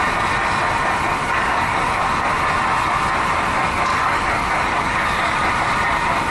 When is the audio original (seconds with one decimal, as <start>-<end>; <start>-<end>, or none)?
0.0-1.2; 2.3-3.9; 5.5-6.3